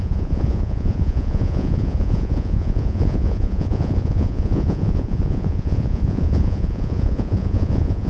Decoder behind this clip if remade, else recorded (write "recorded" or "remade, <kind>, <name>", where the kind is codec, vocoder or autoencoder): remade, vocoder, Vocos